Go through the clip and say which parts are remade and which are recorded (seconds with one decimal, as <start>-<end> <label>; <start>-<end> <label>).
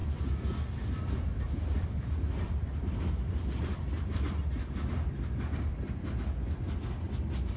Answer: 0.0-3.8 remade; 3.8-5.7 recorded; 5.7-6.6 remade; 6.6-7.6 recorded